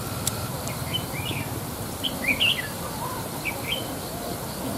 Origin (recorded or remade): recorded